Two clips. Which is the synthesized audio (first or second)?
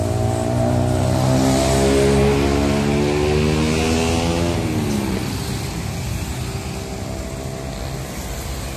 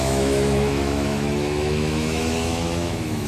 second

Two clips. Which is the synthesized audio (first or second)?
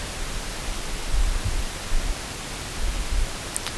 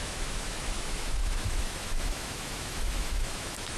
second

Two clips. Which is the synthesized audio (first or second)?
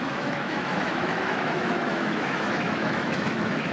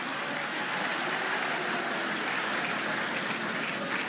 first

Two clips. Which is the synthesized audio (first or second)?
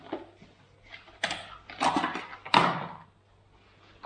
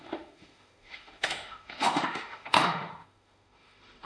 second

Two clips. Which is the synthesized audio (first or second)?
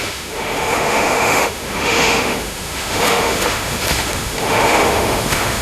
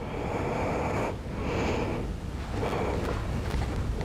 first